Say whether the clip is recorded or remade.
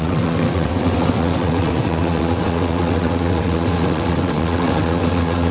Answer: remade